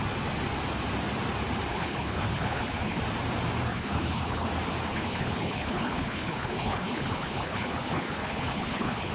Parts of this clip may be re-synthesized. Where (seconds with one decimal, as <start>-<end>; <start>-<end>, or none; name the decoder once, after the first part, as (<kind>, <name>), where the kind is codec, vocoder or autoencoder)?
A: 1.7-3.0 (codec, HILCodec); 3.7-4.5; 4.9-9.1